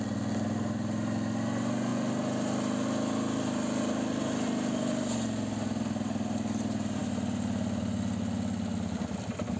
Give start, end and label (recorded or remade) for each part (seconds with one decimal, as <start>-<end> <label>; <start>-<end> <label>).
0.0-9.6 recorded